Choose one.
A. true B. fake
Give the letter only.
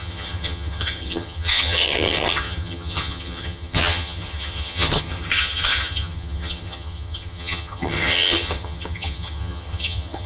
B